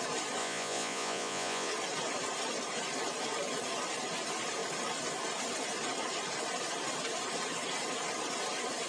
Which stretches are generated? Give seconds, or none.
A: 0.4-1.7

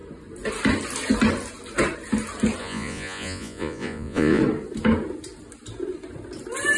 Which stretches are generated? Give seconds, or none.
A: 2.6-4.4

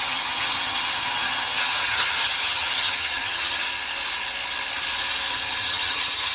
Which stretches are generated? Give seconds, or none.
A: 0.0-3.6; 5.3-6.3

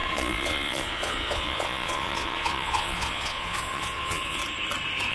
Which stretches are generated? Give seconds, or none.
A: 0.0-4.4

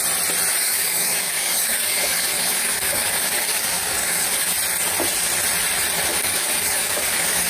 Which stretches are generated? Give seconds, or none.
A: 0.5-4.5; 6.1-7.5

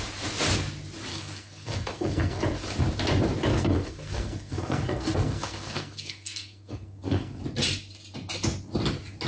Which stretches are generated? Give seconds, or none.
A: 1.1-2.4; 3.5-7.4

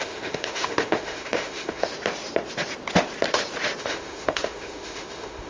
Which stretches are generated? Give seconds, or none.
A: 0.0-1.9; 3.8-5.5